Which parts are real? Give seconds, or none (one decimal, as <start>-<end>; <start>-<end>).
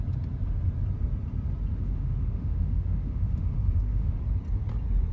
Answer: 0.0-1.7; 4.2-5.1